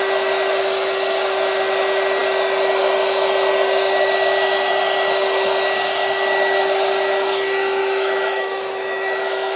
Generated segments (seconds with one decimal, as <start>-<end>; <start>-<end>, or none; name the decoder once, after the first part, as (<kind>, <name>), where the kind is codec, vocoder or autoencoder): 7.8-9.6 (autoencoder, DAC-VAE)